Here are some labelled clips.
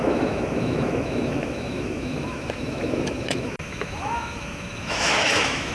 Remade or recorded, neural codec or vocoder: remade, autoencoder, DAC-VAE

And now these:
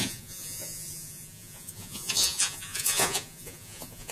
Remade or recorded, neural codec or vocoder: remade, vocoder, Vocos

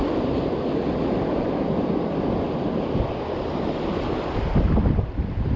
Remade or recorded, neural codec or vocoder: recorded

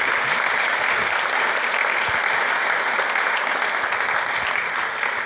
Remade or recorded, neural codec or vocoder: recorded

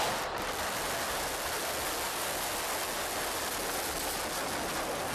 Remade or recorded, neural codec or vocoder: recorded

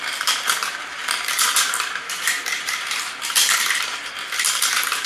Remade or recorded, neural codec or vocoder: remade, vocoder, BigVGAN v2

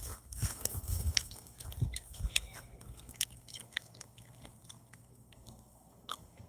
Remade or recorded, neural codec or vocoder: remade, codec, SNAC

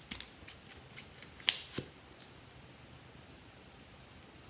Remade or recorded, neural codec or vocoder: recorded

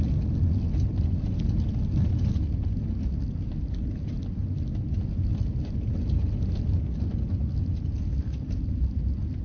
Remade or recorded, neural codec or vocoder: recorded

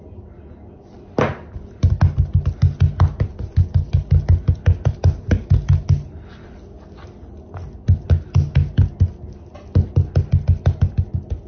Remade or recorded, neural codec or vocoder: recorded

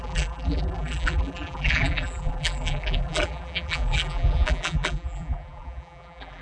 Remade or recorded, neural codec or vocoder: remade, vocoder, BigVGAN v2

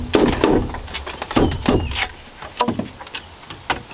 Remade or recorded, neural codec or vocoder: recorded